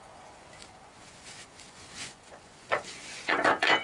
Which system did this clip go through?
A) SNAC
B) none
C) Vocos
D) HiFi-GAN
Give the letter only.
C